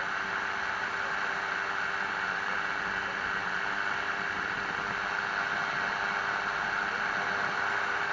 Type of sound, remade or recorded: recorded